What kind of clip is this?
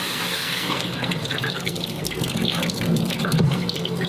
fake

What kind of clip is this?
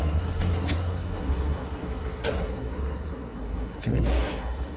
fake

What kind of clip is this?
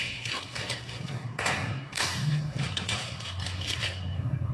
fake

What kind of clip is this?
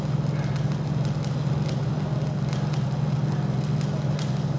real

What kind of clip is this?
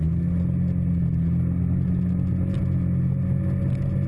real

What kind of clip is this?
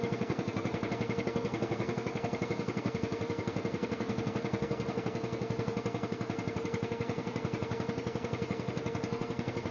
fake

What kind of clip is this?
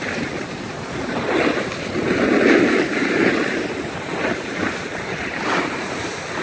real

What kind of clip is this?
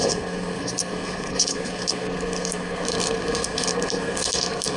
fake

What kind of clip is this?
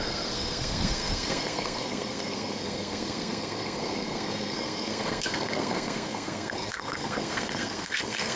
fake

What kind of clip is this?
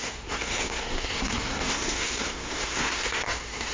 fake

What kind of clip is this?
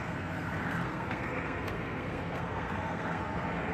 fake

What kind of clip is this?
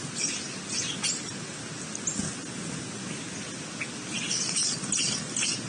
real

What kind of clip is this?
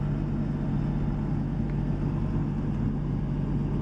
real